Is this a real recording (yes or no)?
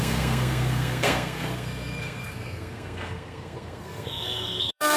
no